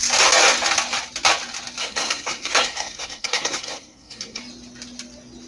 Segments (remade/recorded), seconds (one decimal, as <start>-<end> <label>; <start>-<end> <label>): 0.0-1.8 recorded; 1.8-4.4 remade; 4.4-5.5 recorded